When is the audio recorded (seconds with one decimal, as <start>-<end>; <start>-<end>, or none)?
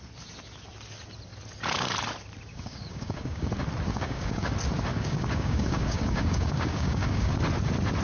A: 0.0-2.5; 3.5-3.9; 4.5-4.9; 7.4-8.0